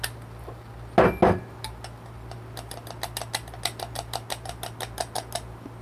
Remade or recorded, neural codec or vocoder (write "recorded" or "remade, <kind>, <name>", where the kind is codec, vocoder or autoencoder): recorded